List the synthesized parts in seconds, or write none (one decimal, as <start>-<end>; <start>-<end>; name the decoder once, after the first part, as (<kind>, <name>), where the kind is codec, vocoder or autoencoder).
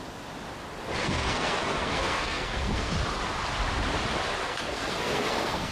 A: 1.0-2.9 (codec, SNAC); 4.4-5.7